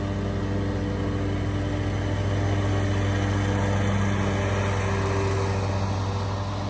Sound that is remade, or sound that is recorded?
recorded